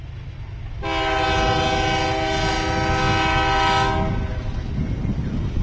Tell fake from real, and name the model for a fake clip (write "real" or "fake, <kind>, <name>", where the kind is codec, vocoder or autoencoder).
real